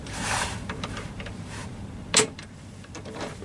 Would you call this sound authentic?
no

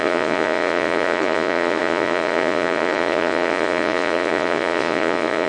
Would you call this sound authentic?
no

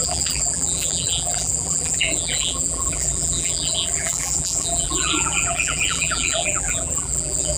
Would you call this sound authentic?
no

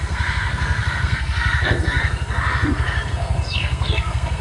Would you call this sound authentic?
no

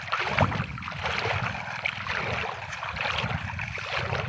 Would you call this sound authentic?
yes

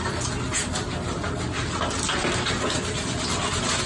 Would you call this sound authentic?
yes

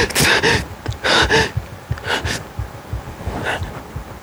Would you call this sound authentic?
yes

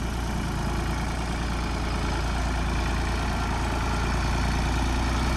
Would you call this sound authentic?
yes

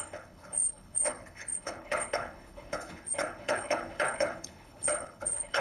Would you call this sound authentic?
no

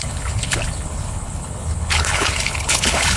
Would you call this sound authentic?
no